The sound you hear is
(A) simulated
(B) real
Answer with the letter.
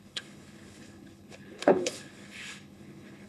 A